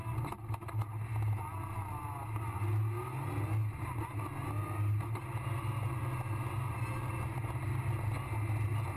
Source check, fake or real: real